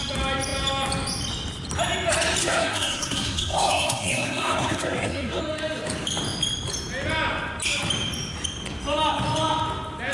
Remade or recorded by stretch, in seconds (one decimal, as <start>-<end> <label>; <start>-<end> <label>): 0.0-2.4 recorded; 2.4-5.4 remade; 5.4-10.1 recorded